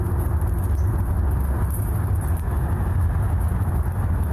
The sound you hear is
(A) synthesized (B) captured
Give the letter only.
B